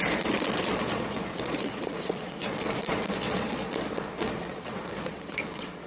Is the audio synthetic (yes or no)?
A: yes